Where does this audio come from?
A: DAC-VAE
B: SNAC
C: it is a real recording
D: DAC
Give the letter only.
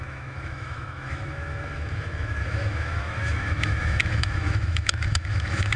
A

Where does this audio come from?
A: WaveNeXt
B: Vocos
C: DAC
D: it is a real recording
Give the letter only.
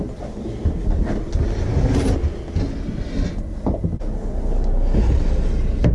D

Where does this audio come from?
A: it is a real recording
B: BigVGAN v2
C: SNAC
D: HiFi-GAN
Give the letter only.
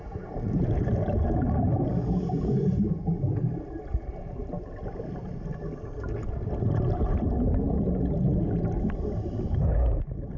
A